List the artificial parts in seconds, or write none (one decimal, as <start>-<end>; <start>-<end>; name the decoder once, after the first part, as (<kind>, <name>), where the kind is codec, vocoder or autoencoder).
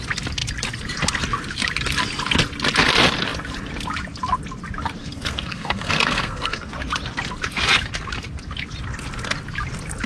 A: 5.0-6.7 (codec, SNAC)